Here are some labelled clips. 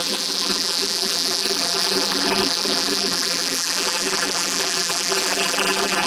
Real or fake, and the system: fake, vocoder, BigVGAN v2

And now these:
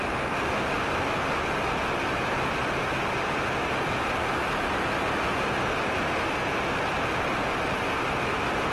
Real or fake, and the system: real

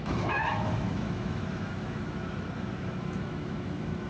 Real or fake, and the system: fake, autoencoder, DAC-VAE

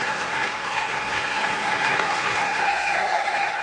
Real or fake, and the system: fake, codec, SNAC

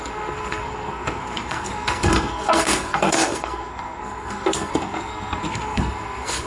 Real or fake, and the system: fake, codec, SNAC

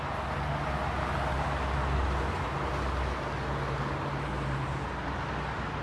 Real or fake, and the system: real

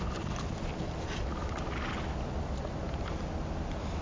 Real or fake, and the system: real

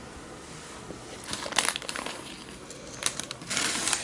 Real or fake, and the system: real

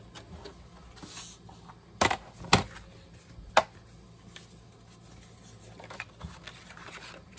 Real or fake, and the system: real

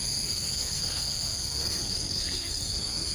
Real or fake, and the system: fake, codec, SNAC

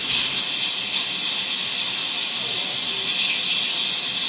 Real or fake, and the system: real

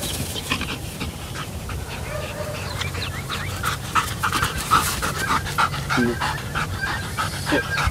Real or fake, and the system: fake, vocoder, BigVGAN v2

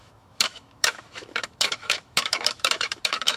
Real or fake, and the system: fake, autoencoder, DAC-VAE